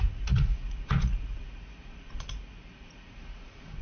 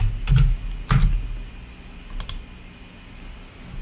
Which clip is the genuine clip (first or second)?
second